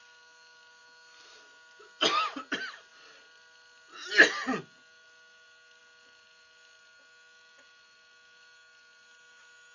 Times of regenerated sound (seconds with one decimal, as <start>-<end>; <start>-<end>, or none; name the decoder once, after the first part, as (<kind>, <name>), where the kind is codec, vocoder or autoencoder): none